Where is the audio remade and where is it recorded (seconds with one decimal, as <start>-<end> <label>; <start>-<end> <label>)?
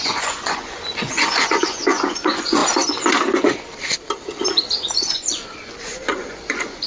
0.0-2.6 remade; 2.6-4.7 recorded; 4.7-6.9 remade